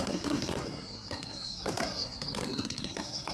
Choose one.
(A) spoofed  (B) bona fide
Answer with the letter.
A